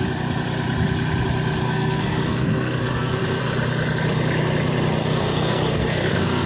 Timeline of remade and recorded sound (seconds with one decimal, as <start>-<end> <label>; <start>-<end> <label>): 0.0-1.6 recorded; 1.6-3.4 remade; 3.4-5.0 recorded; 5.0-6.5 remade